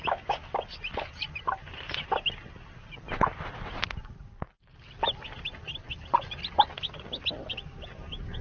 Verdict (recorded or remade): recorded